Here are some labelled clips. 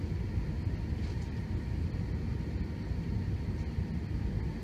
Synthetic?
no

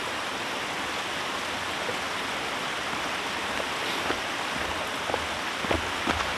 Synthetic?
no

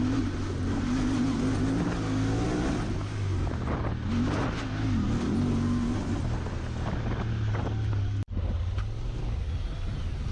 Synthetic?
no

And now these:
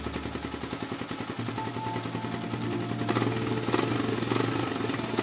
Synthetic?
no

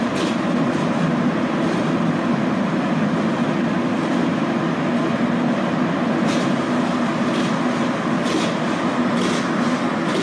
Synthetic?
no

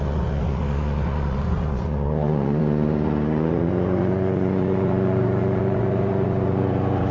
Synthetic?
yes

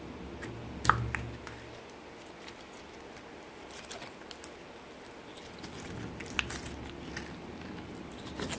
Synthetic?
no